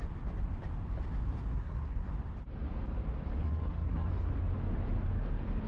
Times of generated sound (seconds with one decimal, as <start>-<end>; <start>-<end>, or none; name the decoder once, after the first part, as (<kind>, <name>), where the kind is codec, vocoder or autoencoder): 1.6-2.1 (codec, SNAC); 3.4-4.1